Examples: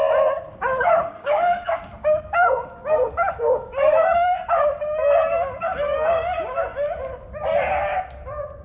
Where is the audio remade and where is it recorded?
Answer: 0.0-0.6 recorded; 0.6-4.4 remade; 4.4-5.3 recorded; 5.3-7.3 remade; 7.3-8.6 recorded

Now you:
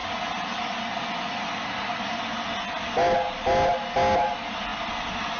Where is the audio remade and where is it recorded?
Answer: 0.0-5.4 recorded

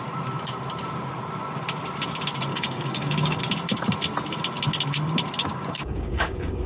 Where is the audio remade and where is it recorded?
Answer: 0.0-2.5 recorded; 2.5-3.4 remade; 3.4-5.4 recorded; 5.4-6.7 remade

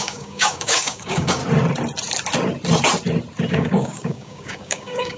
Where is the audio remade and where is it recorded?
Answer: 0.0-1.4 remade; 1.4-3.5 recorded; 3.5-5.2 remade

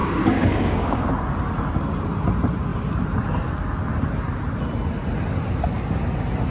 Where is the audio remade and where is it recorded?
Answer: 0.0-1.1 remade; 1.1-6.5 recorded

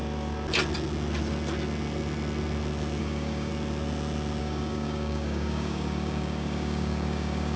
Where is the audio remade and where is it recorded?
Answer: 0.0-3.0 recorded; 3.0-3.5 remade; 3.5-4.4 recorded; 4.4-7.6 remade